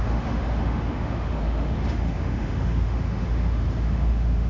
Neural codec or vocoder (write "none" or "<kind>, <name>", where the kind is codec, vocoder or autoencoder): autoencoder, DAC-VAE